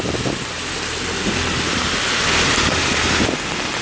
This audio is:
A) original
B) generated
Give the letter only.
A